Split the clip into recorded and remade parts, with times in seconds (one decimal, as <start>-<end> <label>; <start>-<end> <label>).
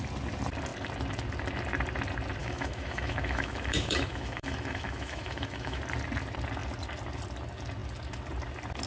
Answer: 0.0-2.4 recorded; 2.4-5.8 remade; 5.8-8.9 recorded